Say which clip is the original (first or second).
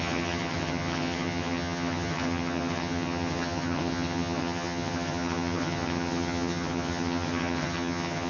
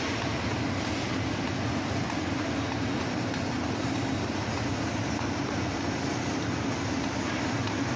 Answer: second